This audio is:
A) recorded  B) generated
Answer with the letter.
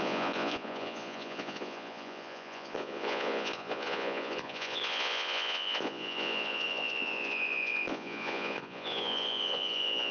B